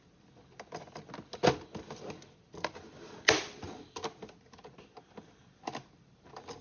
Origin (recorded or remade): recorded